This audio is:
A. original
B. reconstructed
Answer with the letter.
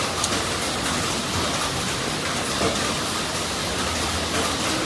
A